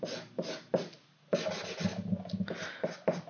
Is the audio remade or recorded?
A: recorded